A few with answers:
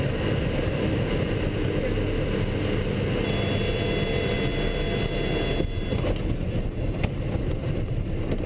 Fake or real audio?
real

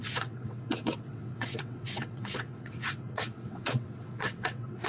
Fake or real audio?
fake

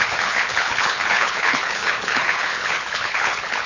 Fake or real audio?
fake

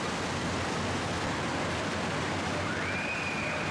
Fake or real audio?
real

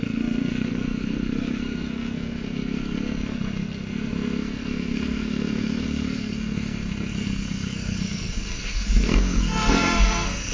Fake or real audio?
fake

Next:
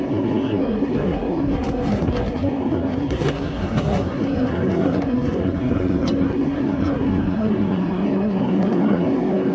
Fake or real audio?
fake